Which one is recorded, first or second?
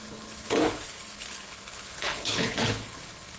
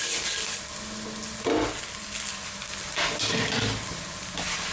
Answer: second